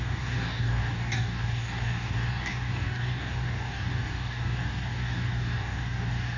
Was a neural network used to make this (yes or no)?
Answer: yes